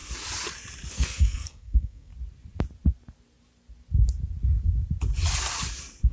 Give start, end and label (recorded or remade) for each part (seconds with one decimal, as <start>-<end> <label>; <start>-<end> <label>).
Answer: 0.0-0.9 recorded; 0.9-2.1 remade; 2.1-6.1 recorded